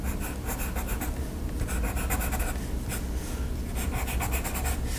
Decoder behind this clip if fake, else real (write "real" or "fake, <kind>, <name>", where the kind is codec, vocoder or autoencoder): real